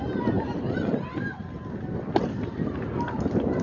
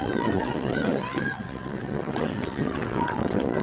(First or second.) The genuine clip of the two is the first